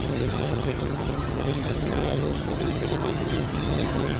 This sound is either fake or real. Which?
fake